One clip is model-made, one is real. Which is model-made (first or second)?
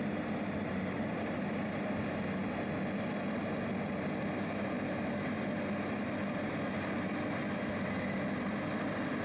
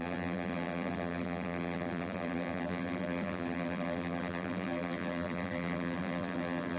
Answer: second